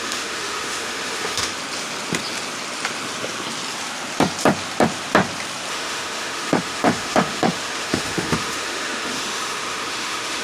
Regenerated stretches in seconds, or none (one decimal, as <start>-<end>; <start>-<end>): 0.0-1.5; 5.7-10.4